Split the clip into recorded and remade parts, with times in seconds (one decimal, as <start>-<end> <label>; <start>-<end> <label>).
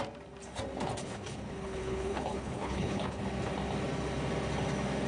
0.0-1.0 recorded; 1.0-3.2 remade; 3.2-5.1 recorded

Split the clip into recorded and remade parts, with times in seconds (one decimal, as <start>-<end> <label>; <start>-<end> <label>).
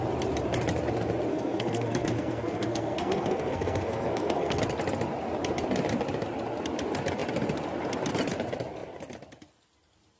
0.0-1.3 recorded; 1.3-4.6 remade; 4.6-10.2 recorded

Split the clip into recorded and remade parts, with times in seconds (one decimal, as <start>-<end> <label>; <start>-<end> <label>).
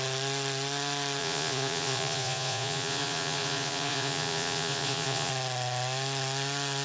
0.0-1.2 recorded; 1.2-5.3 remade; 5.3-6.8 recorded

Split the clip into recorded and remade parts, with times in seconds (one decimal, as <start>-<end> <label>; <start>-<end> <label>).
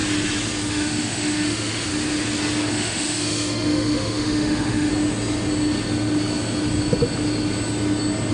0.0-0.7 recorded; 0.7-1.9 remade; 1.9-2.7 recorded; 2.7-4.9 remade; 4.9-8.3 recorded